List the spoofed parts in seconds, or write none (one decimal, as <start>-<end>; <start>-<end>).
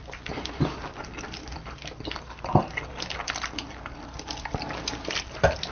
none